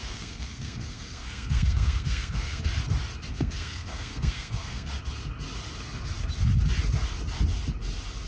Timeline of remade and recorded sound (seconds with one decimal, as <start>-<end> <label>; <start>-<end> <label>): 0.0-2.6 remade; 2.6-3.3 recorded; 3.3-4.9 remade; 4.9-8.3 recorded